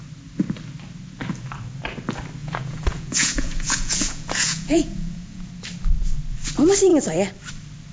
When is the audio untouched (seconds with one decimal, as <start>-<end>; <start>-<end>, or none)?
0.0-2.4; 5.5-7.9